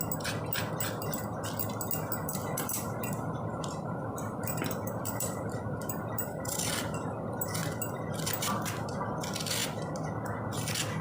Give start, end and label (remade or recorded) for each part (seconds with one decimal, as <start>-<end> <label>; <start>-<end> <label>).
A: 0.0-2.2 recorded; 2.2-6.5 remade; 6.5-11.0 recorded